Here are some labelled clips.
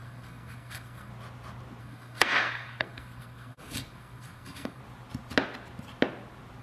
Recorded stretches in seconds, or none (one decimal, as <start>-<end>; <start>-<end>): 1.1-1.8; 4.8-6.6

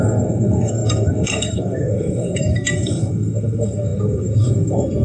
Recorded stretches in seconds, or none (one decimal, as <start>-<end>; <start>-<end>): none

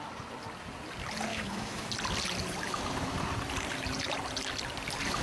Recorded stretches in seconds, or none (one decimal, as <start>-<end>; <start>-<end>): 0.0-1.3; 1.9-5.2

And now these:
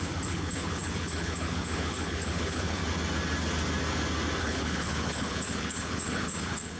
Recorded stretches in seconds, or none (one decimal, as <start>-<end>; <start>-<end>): 2.8-4.4

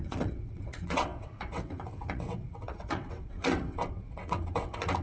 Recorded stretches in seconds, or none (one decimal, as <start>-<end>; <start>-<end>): none

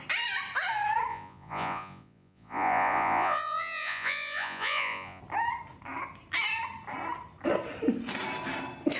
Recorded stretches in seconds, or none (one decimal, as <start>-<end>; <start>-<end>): 0.0-1.1; 5.2-9.0